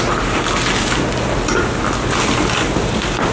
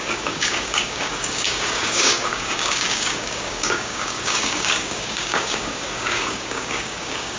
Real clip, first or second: first